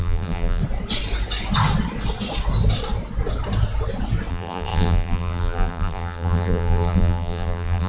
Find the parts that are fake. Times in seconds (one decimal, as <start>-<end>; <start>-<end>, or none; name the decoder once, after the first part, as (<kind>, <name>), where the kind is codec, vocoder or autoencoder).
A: 0.0-0.6 (vocoder, BigVGAN v2); 4.3-7.9